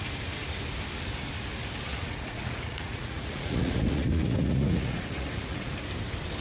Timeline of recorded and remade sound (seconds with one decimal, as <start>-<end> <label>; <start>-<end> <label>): 0.0-1.9 recorded; 1.9-5.7 remade; 5.7-6.4 recorded